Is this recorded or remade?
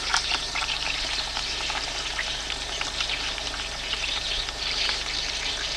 remade